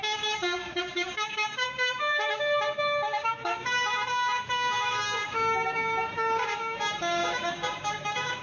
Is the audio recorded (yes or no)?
no